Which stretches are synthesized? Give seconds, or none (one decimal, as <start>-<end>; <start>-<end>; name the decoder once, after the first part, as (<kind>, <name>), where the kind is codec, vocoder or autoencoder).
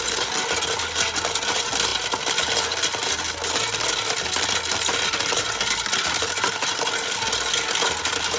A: none